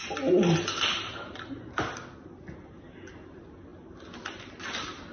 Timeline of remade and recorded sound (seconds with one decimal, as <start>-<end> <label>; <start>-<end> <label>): 0.0-5.1 recorded